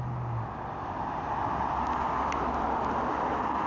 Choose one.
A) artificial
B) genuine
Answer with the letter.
B